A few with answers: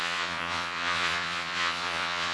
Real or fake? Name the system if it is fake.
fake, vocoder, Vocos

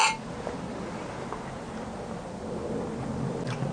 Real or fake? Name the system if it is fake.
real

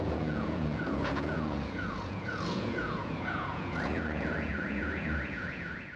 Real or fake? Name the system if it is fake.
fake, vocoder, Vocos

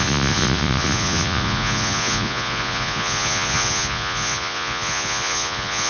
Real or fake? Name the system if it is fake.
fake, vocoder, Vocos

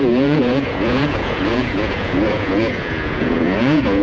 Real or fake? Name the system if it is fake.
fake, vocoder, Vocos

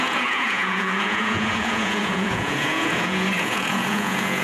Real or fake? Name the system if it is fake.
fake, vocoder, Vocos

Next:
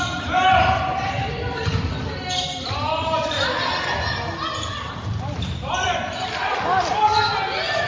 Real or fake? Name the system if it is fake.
real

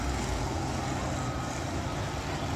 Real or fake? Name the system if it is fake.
real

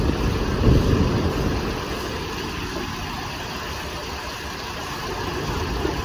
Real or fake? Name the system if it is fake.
real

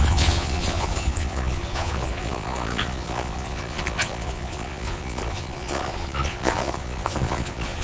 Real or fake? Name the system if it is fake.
fake, vocoder, Vocos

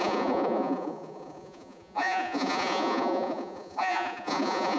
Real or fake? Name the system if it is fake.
fake, vocoder, Vocos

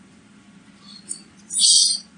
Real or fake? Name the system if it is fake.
real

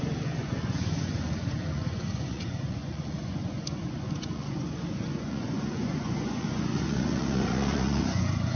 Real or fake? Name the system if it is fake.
fake, vocoder, Vocos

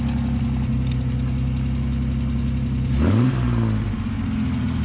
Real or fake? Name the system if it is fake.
real